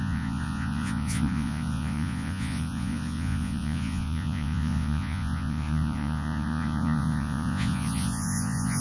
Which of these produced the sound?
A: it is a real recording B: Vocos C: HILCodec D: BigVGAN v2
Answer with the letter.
B